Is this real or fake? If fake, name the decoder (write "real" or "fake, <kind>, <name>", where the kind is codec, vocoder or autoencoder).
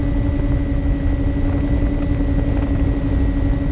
real